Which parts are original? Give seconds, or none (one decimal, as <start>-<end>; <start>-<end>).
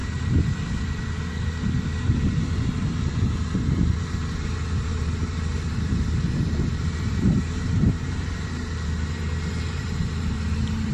0.0-3.9